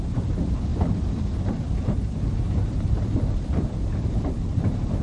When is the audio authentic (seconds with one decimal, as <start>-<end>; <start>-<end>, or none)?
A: 0.7-1.4

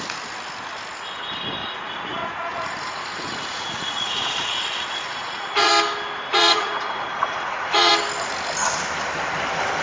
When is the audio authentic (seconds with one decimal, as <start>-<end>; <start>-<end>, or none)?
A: 0.0-1.6; 5.7-6.3; 7.9-9.8